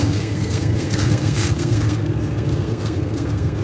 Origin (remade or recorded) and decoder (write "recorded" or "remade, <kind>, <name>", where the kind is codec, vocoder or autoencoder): remade, codec, SNAC